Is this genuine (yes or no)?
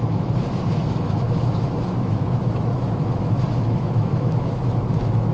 no